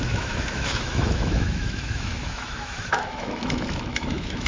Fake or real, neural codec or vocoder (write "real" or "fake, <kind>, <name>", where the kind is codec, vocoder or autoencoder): fake, autoencoder, DAC-VAE